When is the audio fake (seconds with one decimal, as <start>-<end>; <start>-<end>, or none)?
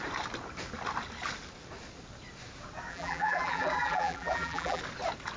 2.9-4.8